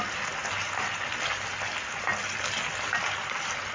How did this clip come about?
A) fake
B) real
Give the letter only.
B